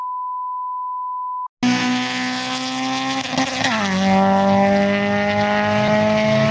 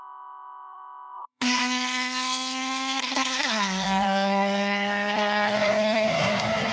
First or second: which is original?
first